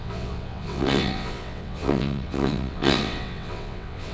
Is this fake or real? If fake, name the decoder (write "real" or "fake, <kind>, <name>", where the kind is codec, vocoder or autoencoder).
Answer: fake, vocoder, WaveNeXt